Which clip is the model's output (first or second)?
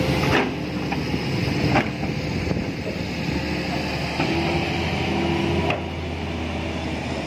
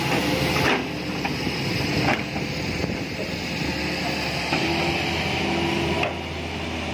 second